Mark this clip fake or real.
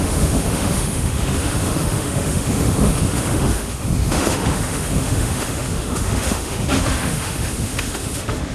fake